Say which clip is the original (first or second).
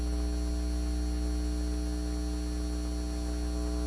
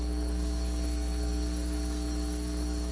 first